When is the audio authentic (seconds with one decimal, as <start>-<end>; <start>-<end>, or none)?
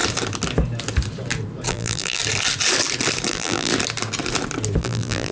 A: 0.0-1.7; 2.2-3.3; 3.7-4.8